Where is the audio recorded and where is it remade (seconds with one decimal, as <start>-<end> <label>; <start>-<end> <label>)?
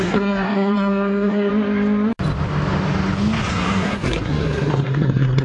0.0-1.5 remade; 1.5-3.5 recorded; 3.5-5.4 remade